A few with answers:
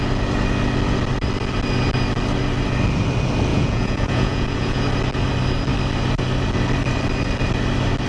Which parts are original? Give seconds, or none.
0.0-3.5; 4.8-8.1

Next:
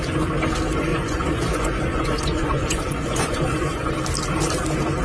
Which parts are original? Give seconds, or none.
0.0-0.9; 3.9-5.0

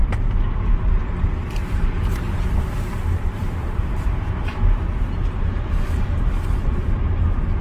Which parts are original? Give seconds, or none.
0.9-1.6; 6.2-7.6

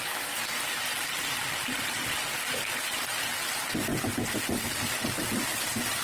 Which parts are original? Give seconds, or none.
3.9-4.9

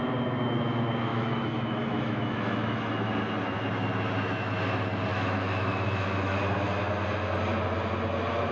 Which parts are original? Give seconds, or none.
0.0-1.1; 3.1-5.1; 6.4-8.5

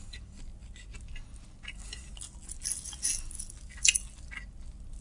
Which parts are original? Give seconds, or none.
0.0-5.0

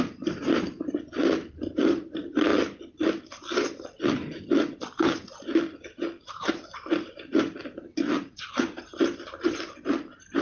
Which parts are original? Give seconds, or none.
2.5-6.3; 7.3-8.2

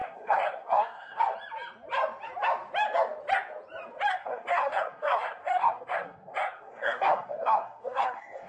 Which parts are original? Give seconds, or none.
1.2-4.1